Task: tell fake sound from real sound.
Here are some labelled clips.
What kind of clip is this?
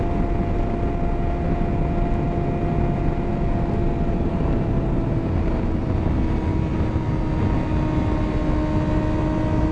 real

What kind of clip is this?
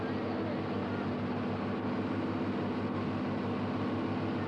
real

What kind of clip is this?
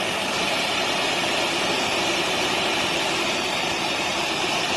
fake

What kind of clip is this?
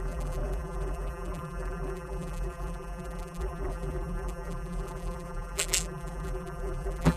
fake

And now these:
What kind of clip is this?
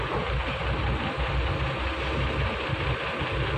real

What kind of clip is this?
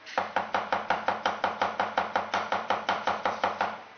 fake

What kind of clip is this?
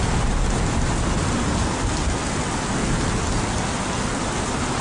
real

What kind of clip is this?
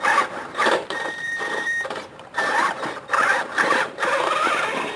fake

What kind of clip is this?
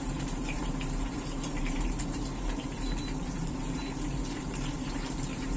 fake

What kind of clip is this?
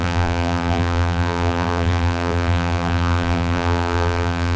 fake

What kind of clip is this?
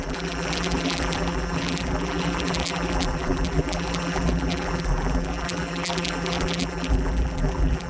fake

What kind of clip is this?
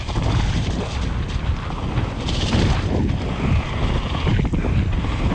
real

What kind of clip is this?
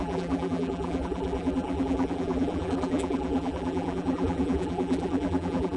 fake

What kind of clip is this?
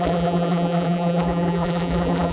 fake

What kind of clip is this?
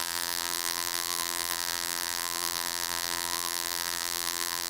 fake